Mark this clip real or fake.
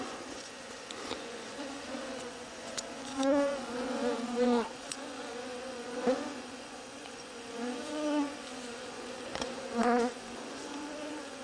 fake